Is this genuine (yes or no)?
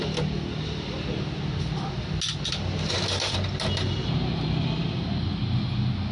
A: yes